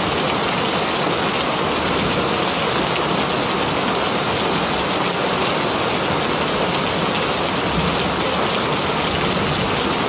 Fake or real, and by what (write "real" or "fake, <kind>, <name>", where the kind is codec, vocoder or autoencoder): real